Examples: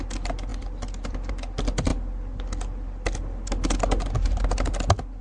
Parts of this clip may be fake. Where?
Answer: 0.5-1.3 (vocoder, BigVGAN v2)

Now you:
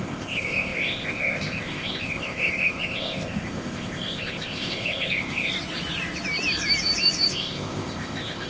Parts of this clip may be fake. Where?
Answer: 0.0-5.5 (codec, ZipCodec); 7.3-8.5

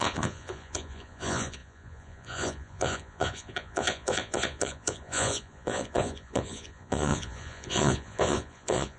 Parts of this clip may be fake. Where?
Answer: 0.0-9.0 (vocoder, Vocos)

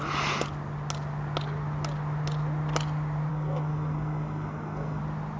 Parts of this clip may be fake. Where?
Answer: 3.3-5.0 (codec, SNAC)

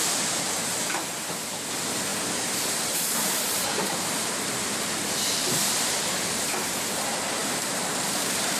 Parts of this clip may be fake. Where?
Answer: 2.1-4.6 (vocoder, BigVGAN v2); 7.4-8.6

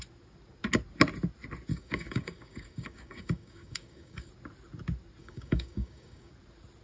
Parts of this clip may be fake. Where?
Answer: 1.7-4.3 (codec, DAC); 5.2-6.3